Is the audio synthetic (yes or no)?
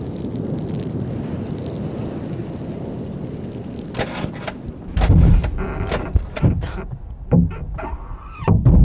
no